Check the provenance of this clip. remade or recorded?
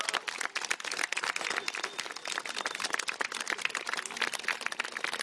recorded